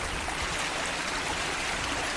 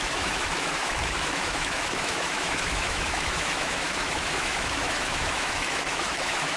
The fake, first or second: second